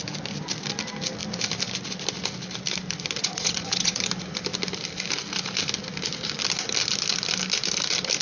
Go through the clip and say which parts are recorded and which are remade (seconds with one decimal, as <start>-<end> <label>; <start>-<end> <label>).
0.0-3.2 recorded; 3.2-4.0 remade; 4.0-8.2 recorded